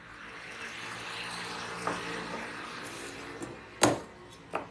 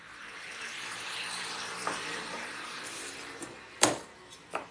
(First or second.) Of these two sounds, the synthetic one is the second